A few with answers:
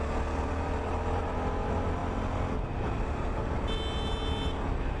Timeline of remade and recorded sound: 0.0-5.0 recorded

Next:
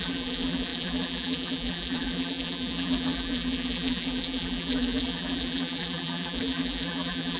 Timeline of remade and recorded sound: 0.0-7.4 remade

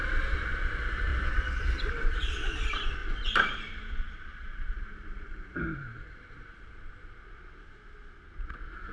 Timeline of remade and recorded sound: 0.0-3.0 recorded; 3.0-3.7 remade; 3.7-4.3 recorded; 4.3-6.9 remade; 6.9-8.9 recorded

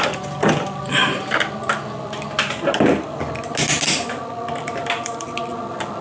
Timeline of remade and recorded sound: 0.0-1.0 remade; 1.0-4.6 recorded; 4.6-6.0 remade

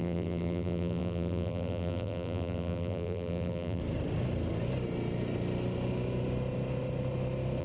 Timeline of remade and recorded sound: 0.0-3.8 remade; 3.8-7.6 recorded

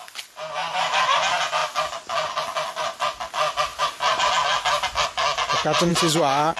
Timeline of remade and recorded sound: 0.0-3.7 recorded; 3.7-4.2 remade; 4.2-5.9 recorded; 5.9-6.6 remade

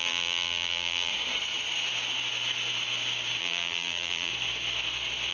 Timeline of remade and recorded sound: 0.0-1.1 remade; 1.1-3.4 recorded; 3.4-4.3 remade; 4.3-5.3 recorded